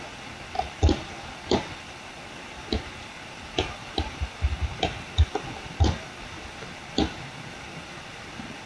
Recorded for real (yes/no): no